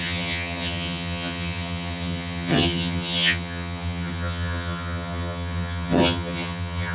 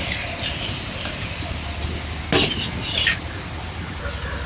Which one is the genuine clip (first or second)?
second